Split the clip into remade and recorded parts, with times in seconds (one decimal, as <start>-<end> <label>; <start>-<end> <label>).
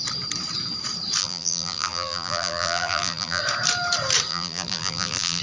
0.0-1.2 recorded; 1.2-3.4 remade; 3.4-4.3 recorded; 4.3-5.4 remade